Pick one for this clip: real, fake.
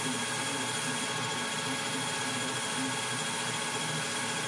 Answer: real